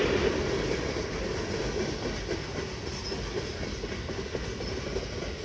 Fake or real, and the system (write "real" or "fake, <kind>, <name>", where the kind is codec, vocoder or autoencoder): real